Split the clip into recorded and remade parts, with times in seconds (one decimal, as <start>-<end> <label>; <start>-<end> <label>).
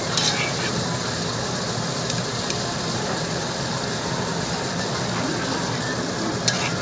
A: 0.0-6.8 recorded